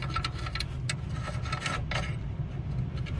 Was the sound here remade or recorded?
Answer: recorded